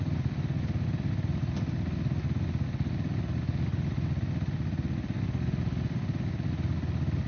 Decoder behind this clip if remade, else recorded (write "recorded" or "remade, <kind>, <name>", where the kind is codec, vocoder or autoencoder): recorded